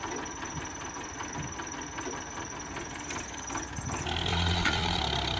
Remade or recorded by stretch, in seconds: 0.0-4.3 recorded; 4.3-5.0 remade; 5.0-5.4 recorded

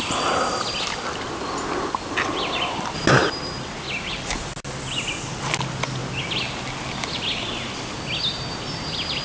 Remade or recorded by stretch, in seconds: 0.0-9.2 recorded

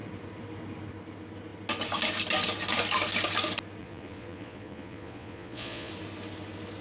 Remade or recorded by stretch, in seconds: 0.0-3.8 recorded; 3.8-5.9 remade; 5.9-6.8 recorded

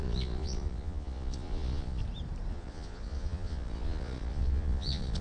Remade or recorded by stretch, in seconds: 0.0-2.0 remade; 2.0-2.5 recorded; 2.5-5.2 remade